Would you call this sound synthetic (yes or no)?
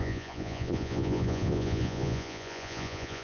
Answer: yes